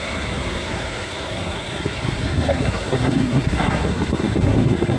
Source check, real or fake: fake